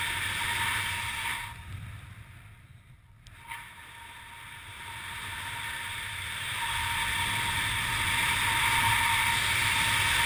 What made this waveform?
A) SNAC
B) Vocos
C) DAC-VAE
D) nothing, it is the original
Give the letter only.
D